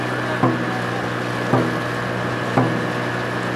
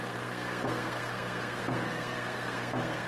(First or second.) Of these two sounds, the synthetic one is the second